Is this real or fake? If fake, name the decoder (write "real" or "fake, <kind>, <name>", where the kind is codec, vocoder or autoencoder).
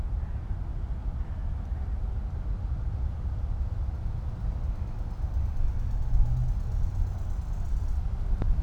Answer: real